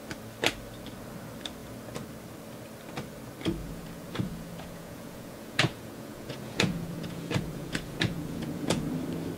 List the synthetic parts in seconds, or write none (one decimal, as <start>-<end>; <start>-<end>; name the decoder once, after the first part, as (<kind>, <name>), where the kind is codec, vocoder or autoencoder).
3.6-8.9 (vocoder, Vocos)